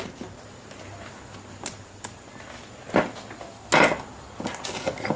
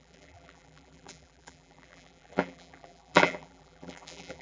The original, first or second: first